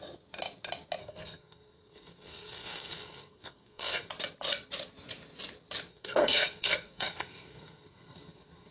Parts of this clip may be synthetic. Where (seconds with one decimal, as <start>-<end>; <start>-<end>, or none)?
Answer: 1.0-4.1; 5.9-8.7